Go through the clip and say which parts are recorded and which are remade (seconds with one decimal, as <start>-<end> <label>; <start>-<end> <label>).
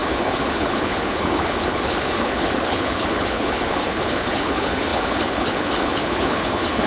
0.0-6.9 remade